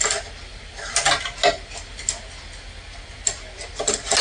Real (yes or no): yes